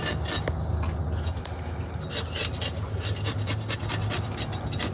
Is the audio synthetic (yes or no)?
no